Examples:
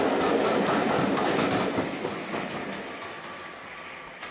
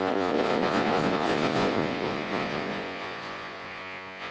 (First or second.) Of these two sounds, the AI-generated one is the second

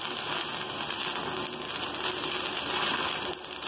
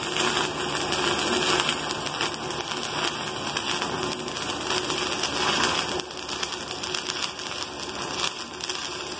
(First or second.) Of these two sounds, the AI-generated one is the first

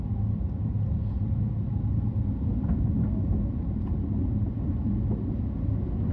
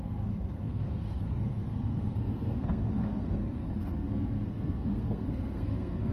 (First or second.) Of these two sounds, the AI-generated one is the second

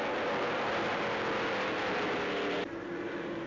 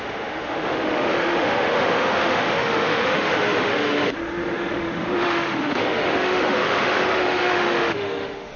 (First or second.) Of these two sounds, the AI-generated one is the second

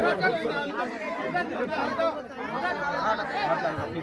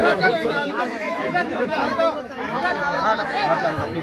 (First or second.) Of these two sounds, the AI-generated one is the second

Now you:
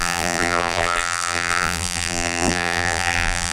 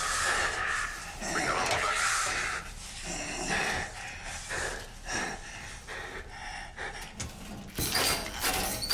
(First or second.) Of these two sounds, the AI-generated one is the first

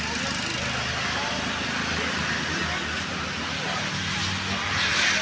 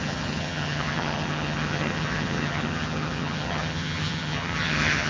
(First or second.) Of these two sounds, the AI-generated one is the second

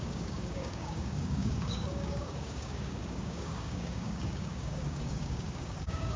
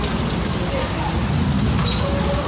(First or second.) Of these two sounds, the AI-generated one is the first